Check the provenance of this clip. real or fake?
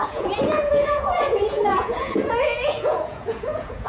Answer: fake